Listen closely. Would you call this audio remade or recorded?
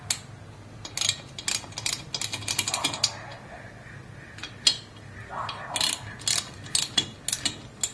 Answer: recorded